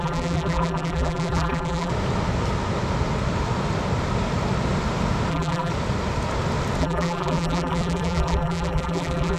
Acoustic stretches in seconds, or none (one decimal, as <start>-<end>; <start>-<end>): 1.9-5.3; 5.7-6.8